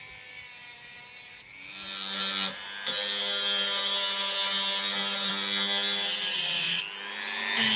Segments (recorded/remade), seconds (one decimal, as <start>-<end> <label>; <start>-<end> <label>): 0.0-6.3 recorded; 6.3-6.8 remade; 6.8-7.8 recorded

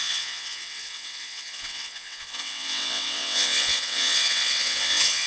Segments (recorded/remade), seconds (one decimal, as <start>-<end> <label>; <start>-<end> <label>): 0.0-5.3 remade